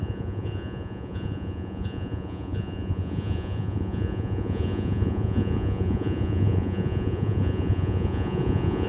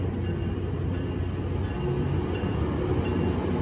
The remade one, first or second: first